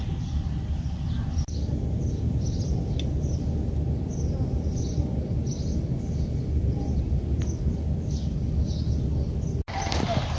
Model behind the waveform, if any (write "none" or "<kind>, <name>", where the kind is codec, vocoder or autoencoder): none